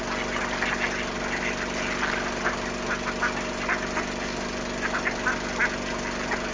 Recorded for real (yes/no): yes